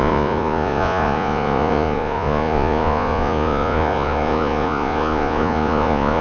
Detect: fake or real fake